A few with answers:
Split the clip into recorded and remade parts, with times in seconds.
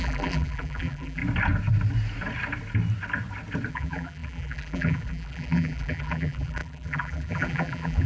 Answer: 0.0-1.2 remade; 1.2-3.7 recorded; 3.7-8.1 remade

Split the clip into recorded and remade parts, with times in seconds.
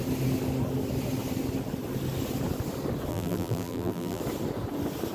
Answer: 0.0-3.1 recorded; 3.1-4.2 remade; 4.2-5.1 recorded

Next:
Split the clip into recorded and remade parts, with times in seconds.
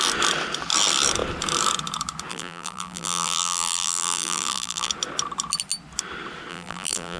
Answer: 0.0-2.3 recorded; 2.3-4.9 remade; 4.9-6.5 recorded; 6.5-7.2 remade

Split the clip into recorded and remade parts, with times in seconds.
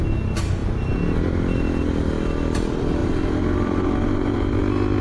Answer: 0.0-3.0 recorded; 3.0-4.6 remade; 4.6-5.0 recorded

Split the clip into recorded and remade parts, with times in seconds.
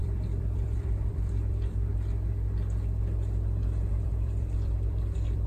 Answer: 0.0-1.9 remade; 1.9-3.9 recorded; 3.9-5.5 remade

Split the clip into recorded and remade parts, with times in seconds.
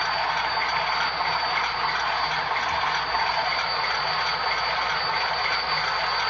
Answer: 0.0-6.3 recorded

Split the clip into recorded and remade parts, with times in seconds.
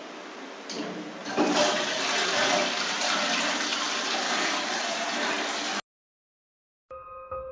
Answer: 0.0-1.2 recorded; 1.2-2.0 remade; 2.0-3.7 recorded; 3.7-5.0 remade; 5.0-7.5 recorded